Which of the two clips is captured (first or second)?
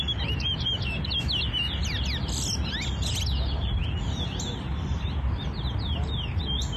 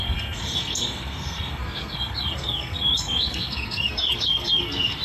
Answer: first